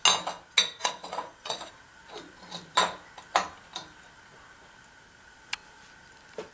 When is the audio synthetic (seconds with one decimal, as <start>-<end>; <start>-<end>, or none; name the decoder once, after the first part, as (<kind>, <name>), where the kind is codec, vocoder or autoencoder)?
0.8-1.7 (vocoder, WaveNeXt)